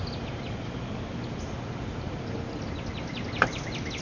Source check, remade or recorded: recorded